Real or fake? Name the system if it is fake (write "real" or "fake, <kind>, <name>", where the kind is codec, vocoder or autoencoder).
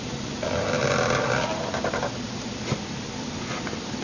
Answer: real